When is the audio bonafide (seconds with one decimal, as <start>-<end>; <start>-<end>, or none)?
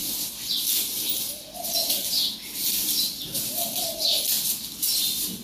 0.5-1.9; 4.6-5.4